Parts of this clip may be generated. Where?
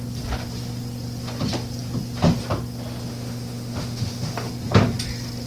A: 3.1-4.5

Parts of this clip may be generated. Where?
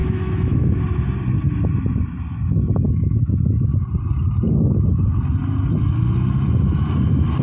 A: 0.0-0.8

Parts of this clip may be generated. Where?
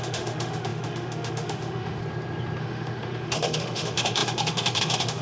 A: 0.0-2.0; 2.6-5.2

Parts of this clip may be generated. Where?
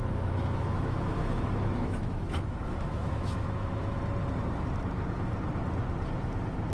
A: 0.0-4.0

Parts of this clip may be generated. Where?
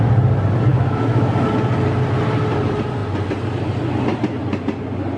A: 0.7-1.3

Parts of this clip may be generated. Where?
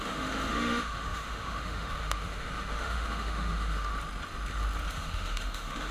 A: 0.0-3.9; 4.9-5.9